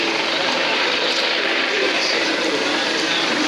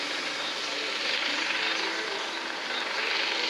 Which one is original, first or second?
second